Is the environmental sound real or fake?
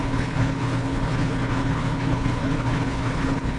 fake